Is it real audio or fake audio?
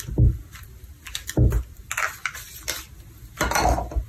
real